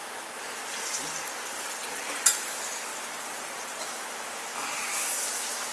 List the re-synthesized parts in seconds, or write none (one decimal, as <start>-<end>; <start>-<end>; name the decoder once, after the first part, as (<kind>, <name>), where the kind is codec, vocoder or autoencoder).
0.0-0.6 (autoencoder, DAC-VAE); 2.4-2.9; 3.8-5.7